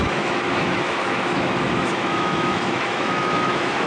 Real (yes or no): no